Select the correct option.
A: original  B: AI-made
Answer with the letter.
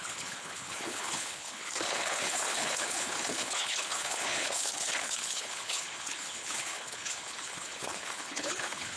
B